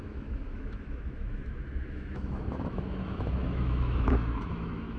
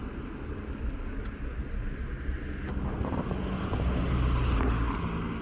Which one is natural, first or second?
second